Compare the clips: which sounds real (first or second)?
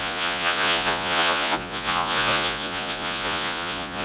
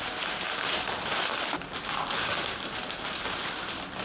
second